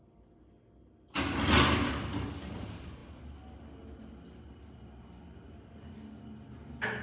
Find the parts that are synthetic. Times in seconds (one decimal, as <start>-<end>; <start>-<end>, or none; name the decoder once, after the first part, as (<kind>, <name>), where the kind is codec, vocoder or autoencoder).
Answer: none